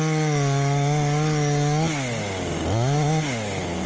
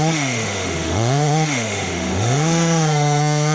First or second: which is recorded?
first